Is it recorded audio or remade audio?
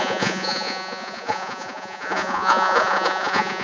remade